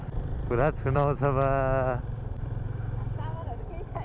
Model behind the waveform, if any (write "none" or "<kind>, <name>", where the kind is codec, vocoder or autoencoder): vocoder, BigVGAN v2